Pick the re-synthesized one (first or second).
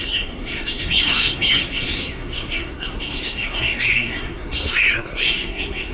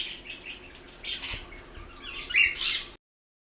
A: first